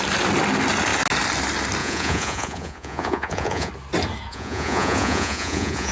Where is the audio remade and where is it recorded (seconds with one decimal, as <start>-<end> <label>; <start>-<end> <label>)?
0.0-1.8 recorded; 1.8-3.7 remade; 3.7-4.3 recorded; 4.3-5.9 remade